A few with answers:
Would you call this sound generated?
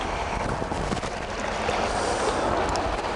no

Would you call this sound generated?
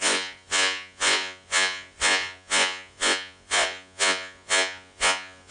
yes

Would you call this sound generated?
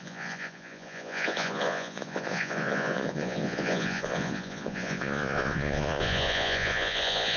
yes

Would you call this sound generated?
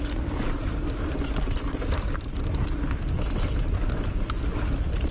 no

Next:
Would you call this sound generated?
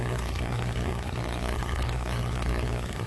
yes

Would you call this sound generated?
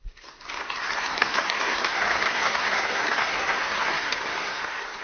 yes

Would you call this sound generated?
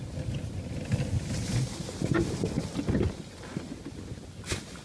no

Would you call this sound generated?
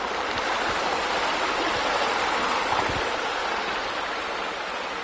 no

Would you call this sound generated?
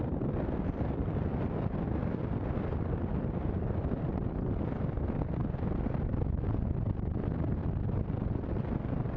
no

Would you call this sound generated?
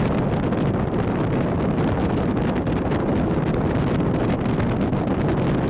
no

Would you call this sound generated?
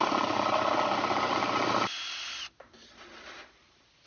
no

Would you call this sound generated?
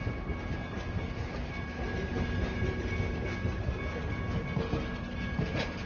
no